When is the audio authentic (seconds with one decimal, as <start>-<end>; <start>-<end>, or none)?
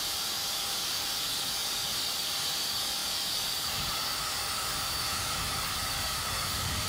none